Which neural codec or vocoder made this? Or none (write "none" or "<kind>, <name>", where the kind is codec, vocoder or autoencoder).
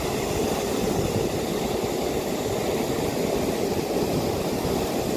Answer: none